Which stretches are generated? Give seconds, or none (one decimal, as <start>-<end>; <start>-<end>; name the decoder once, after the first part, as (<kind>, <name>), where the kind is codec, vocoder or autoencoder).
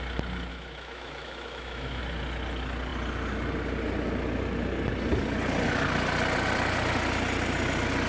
0.5-2.0 (autoencoder, DAC-VAE)